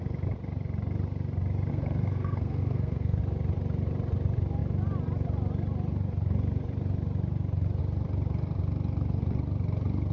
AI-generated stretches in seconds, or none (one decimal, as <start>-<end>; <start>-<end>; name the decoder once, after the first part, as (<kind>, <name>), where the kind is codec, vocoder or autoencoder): 1.7-3.2 (codec, SNAC)

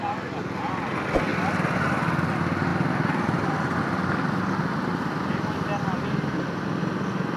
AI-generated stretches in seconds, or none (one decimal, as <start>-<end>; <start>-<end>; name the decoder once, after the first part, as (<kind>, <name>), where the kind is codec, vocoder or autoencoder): 1.3-1.9 (vocoder, BigVGAN v2); 2.7-3.8

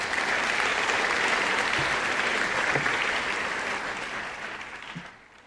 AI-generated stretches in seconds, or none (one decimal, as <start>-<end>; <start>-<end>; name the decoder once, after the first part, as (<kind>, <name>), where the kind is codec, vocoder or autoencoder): 0.7-3.7 (vocoder, BigVGAN v2)

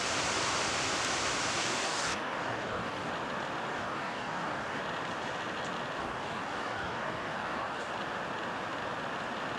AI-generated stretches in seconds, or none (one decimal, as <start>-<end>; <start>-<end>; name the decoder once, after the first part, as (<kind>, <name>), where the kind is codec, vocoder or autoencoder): 1.6-3.1 (codec, DAC); 3.7-4.8; 6.0-7.9

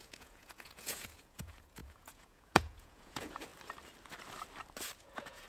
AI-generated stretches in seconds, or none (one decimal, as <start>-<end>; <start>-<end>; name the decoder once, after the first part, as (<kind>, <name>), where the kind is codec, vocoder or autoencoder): 0.0-3.5 (vocoder, Vocos); 5.0-5.5

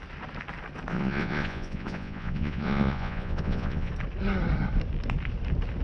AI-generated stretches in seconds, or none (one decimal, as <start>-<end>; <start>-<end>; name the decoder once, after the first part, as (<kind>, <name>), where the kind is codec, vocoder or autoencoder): 0.9-3.9 (vocoder, Vocos)

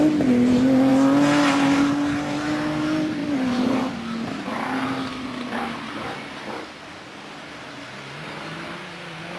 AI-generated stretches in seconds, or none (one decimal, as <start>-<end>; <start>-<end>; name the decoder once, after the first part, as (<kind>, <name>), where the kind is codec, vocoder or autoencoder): 3.2-3.8 (vocoder, BigVGAN v2)